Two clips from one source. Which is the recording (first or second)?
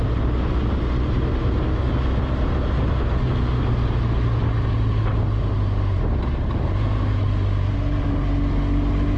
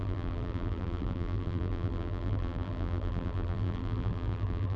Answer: first